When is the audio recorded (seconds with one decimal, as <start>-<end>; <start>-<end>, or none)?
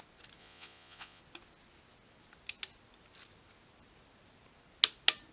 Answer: 0.0-0.4; 1.2-5.3